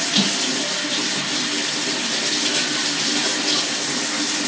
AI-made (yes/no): no